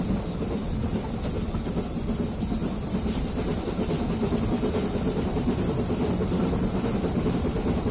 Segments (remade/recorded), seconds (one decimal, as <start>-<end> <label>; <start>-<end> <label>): 0.0-7.9 recorded